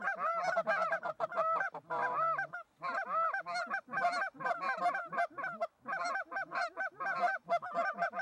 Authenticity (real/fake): real